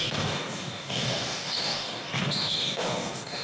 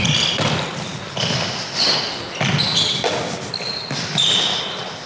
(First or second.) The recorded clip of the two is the second